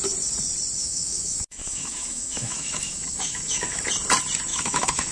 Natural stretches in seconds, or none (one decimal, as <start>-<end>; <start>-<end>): 0.0-0.8; 3.9-4.5